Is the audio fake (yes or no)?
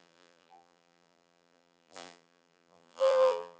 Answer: yes